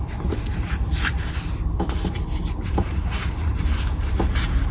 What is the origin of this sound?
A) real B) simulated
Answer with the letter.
B